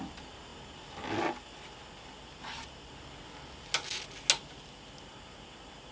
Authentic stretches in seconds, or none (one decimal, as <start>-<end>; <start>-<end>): 0.0-5.9